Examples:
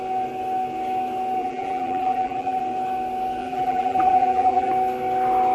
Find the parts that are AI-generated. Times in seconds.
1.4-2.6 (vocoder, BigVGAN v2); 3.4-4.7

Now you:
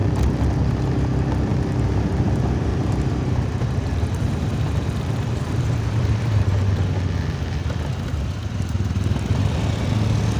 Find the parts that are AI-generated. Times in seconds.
2.7-6.6 (vocoder, BigVGAN v2)